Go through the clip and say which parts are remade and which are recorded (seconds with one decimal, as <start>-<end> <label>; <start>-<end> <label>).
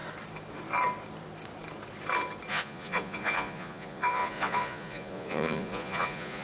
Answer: 0.0-2.5 recorded; 2.5-6.4 remade